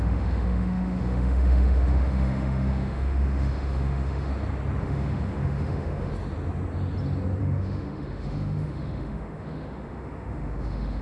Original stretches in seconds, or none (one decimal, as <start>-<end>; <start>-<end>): 4.3-4.8; 6.1-7.4